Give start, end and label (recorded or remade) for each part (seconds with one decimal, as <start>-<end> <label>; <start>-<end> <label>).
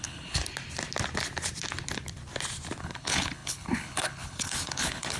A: 0.0-0.4 remade; 0.4-2.8 recorded; 2.8-5.2 remade